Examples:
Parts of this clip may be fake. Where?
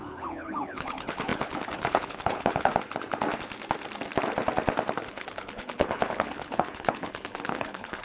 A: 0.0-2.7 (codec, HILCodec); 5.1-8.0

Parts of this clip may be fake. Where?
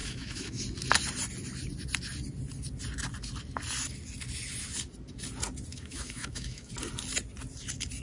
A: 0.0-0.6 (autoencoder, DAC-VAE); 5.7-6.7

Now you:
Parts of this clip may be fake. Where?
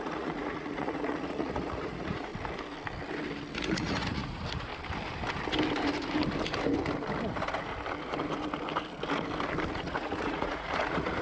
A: 0.0-2.3 (vocoder, Vocos); 3.6-4.7; 9.7-11.2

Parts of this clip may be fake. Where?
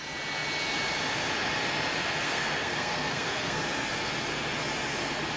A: 2.0-3.6 (codec, SNAC)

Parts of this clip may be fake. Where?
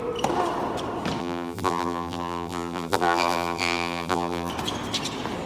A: 1.2-4.5 (vocoder, BigVGAN v2)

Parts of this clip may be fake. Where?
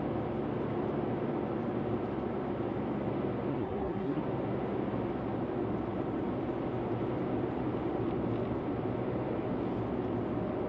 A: 3.5-4.2 (codec, SNAC)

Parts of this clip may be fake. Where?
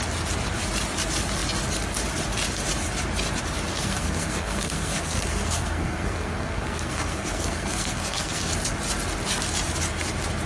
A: 3.7-8.5 (codec, SNAC)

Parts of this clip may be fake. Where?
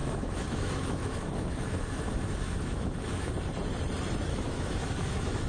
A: 0.0-3.3 (autoencoder, DAC-VAE); 4.3-5.5